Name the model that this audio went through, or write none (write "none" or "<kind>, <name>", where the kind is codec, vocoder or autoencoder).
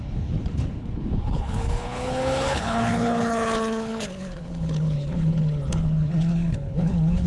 codec, HILCodec